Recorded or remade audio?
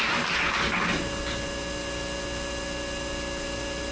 recorded